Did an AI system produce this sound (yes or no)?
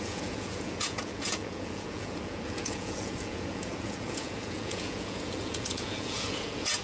yes